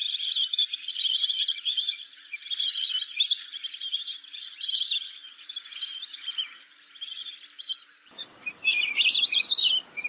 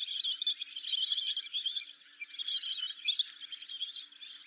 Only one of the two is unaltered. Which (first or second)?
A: second